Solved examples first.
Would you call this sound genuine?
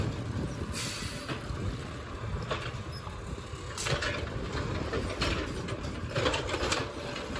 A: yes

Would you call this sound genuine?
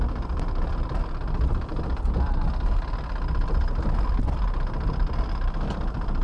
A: no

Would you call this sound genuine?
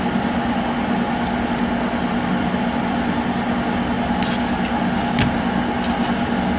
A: yes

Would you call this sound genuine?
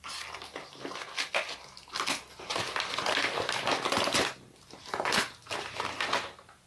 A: yes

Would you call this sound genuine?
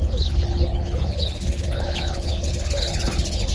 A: no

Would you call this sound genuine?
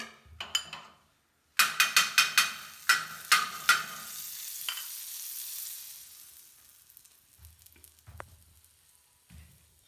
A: yes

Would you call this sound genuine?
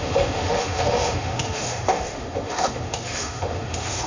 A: no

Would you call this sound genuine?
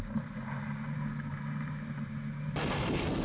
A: yes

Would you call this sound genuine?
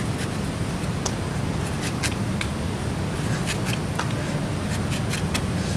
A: yes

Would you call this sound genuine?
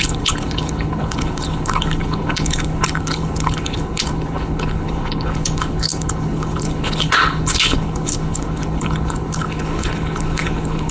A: no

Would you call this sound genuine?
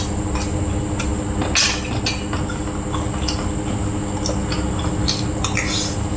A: yes